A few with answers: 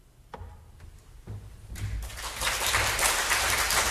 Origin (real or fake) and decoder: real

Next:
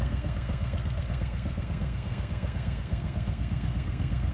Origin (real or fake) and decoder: fake, codec, SNAC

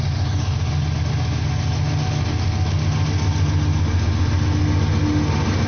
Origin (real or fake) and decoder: real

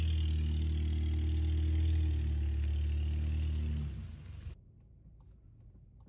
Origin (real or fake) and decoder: real